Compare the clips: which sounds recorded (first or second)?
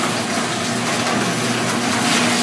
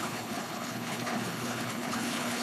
first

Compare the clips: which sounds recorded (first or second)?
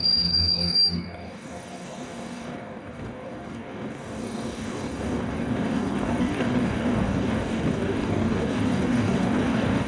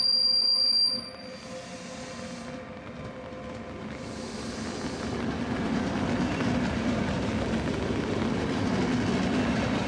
second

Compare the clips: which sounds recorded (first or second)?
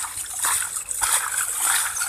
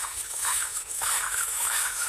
first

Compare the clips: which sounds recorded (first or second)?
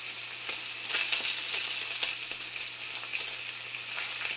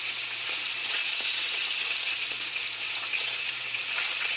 first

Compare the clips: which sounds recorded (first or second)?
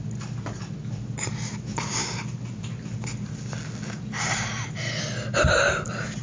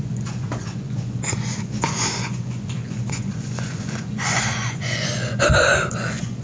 first